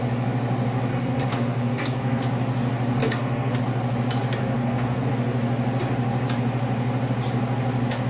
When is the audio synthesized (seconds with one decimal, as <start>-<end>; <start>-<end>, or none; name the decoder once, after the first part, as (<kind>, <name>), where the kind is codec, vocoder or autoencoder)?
0.9-2.2 (codec, SNAC); 3.0-3.6; 4.4-5.1